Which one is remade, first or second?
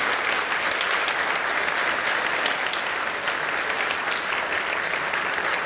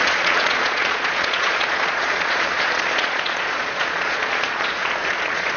second